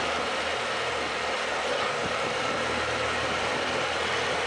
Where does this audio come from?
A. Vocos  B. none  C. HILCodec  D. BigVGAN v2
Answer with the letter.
B